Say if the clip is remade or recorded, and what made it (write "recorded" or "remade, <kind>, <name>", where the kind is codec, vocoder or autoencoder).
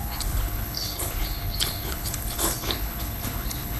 remade, codec, HILCodec